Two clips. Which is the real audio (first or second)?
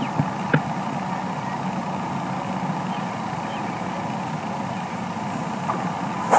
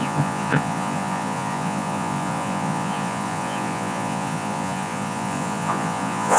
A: first